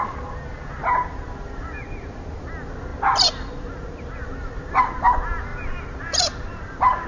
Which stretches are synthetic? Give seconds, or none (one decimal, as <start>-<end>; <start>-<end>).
none